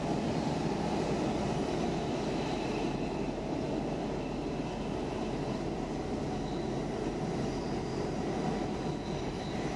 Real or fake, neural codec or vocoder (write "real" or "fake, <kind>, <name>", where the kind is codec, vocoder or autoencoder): real